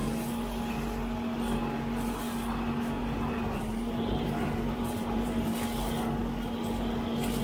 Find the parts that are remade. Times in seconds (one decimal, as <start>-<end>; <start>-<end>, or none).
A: 3.0-5.6